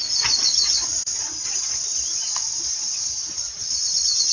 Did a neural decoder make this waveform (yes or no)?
yes